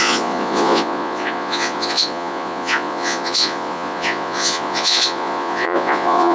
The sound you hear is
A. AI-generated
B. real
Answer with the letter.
A